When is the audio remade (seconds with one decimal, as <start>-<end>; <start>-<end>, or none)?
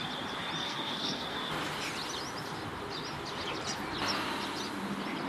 0.6-1.5